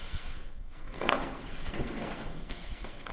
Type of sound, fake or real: fake